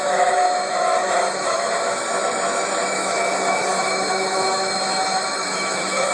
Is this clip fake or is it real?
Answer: fake